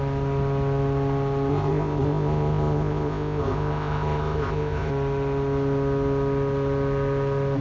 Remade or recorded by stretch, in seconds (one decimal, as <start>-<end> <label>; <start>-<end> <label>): 0.0-1.5 recorded; 1.5-4.9 remade; 4.9-7.6 recorded